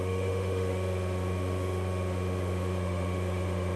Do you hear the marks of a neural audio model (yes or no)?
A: yes